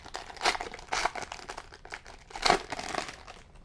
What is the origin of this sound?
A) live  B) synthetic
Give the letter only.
A